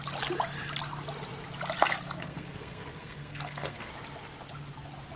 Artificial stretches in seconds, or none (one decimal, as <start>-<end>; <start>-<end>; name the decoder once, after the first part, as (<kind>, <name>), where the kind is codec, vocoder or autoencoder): 2.2-3.9 (codec, SNAC)